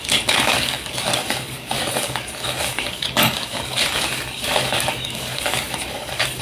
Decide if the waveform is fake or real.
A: fake